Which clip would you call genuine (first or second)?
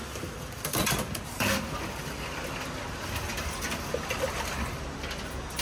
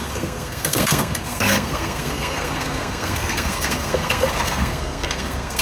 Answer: first